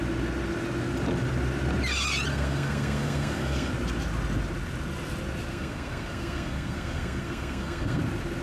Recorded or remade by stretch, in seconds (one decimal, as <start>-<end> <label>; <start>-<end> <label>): 0.0-2.3 recorded; 2.3-3.7 remade; 3.7-5.5 recorded; 5.5-8.0 remade; 8.0-8.4 recorded